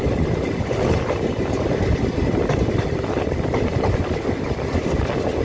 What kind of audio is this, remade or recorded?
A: recorded